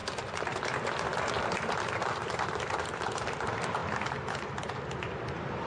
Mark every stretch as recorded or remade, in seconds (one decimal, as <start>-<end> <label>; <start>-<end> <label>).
0.0-1.3 recorded; 1.3-5.7 remade